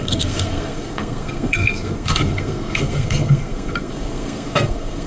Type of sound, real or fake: fake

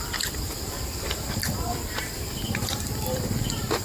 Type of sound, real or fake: fake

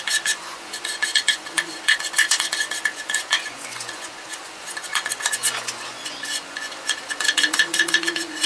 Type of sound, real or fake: fake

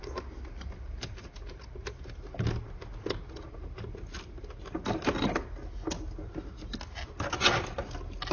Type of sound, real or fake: real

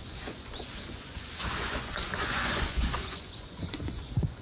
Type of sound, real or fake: fake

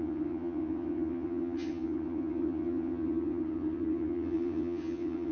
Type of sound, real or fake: fake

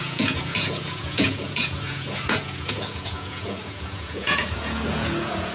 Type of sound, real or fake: fake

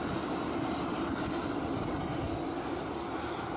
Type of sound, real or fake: real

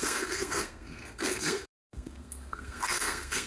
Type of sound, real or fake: fake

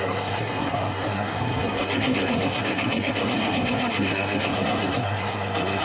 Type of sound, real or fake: fake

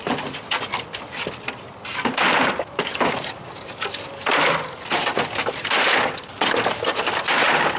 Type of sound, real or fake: fake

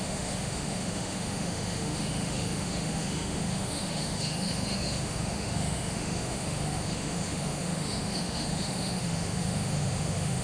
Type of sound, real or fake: fake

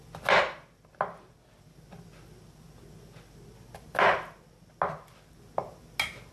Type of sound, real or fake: real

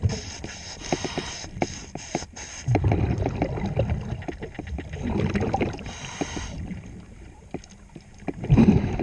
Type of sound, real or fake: real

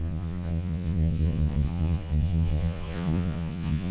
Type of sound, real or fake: fake